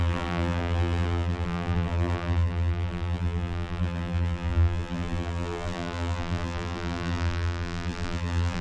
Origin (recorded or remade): remade